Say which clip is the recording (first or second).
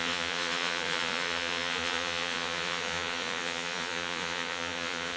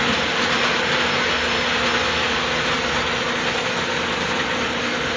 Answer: second